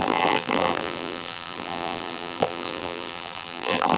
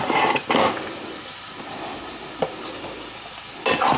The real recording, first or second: second